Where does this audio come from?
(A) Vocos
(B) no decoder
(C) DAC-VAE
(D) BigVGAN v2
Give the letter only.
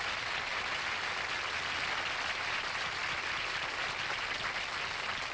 B